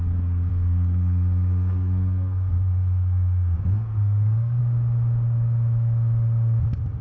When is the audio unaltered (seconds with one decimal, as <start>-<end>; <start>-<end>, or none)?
0.0-0.5; 4.6-7.0

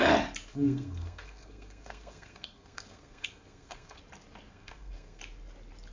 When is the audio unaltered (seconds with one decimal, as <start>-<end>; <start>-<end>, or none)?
0.0-0.5; 4.0-4.5; 5.2-5.9

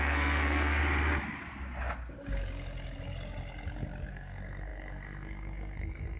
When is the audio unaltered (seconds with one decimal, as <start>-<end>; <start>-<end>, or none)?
0.8-4.1

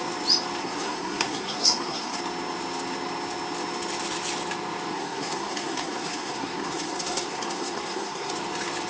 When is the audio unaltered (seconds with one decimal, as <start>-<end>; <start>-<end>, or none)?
0.0-0.6; 2.2-4.9; 8.3-8.9

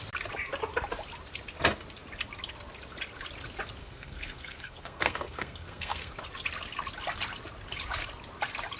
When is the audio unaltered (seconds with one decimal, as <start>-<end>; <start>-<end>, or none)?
0.0-3.8; 6.2-8.8